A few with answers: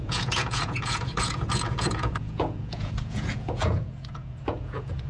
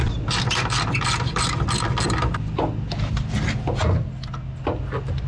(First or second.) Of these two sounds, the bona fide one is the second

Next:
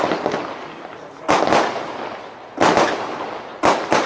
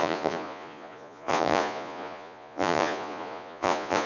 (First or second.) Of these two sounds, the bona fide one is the first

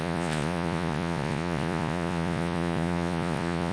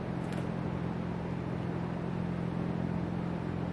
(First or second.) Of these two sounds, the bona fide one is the second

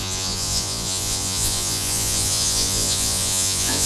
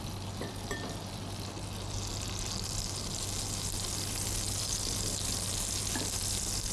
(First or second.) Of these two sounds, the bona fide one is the second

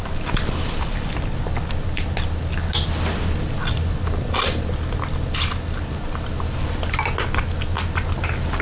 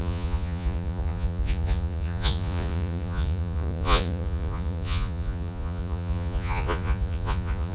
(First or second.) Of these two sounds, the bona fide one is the first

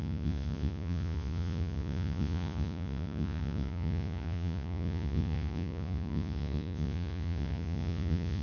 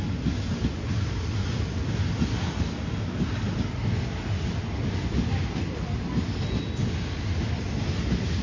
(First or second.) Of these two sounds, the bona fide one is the second